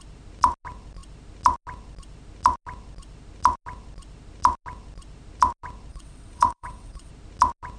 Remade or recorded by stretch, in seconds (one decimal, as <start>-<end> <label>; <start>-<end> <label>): 0.0-5.9 recorded; 5.9-7.1 remade; 7.1-7.8 recorded